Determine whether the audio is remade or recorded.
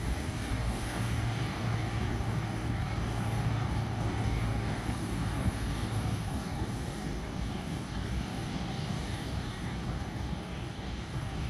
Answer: remade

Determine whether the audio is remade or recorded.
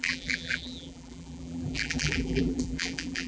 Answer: remade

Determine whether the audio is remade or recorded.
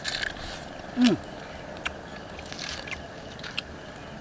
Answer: recorded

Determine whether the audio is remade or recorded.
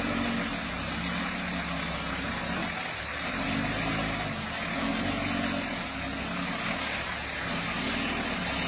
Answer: recorded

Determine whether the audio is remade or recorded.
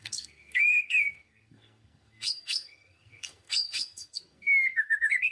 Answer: remade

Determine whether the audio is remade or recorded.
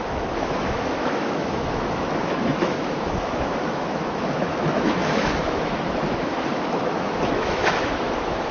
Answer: remade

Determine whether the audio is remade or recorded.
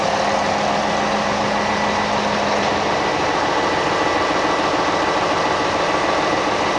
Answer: recorded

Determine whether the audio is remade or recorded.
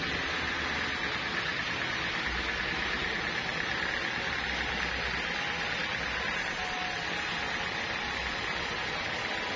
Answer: recorded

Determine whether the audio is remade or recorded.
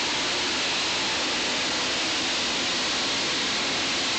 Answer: recorded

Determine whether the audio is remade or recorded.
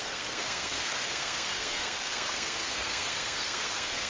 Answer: remade